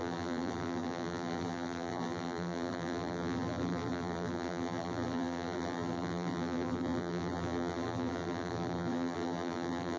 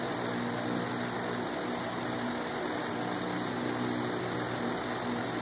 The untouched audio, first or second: second